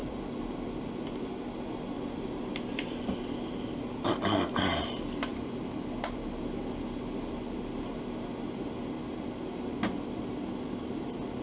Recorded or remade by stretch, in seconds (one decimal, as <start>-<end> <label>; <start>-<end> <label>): 0.0-1.4 remade; 1.4-5.3 recorded; 5.3-6.4 remade; 6.4-11.4 recorded